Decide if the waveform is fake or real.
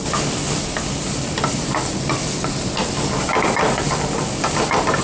real